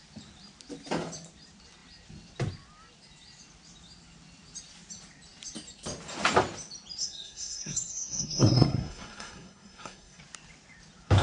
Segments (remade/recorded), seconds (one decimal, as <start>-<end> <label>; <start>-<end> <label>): 0.0-7.0 recorded; 7.0-10.2 remade; 10.2-11.2 recorded